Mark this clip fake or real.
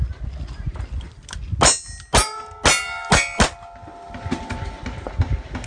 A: real